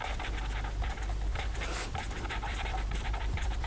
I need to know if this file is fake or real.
fake